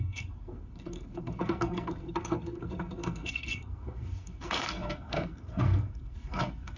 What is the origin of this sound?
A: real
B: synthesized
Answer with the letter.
B